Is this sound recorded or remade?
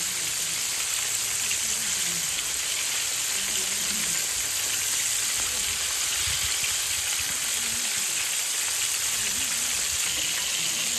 recorded